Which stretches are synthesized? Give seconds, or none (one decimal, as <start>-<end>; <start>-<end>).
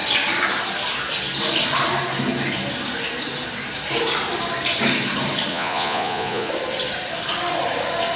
5.5-6.5